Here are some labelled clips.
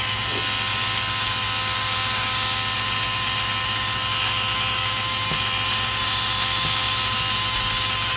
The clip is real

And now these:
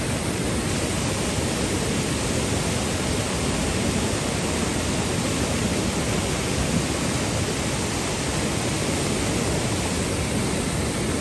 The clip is real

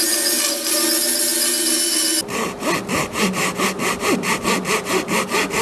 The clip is real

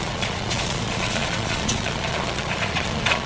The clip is fake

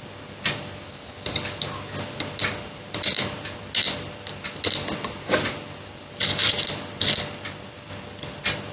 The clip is real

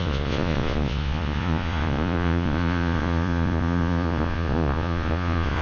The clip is fake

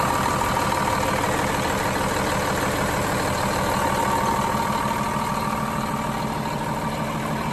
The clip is real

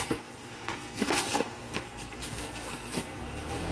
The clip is fake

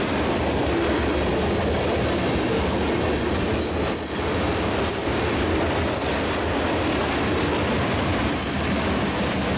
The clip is real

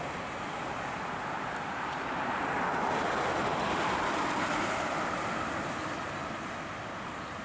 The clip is fake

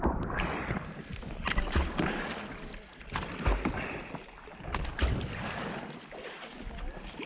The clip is real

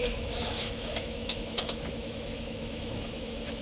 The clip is fake